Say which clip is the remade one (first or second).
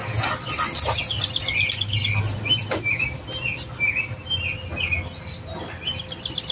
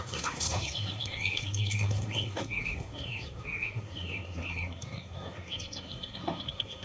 second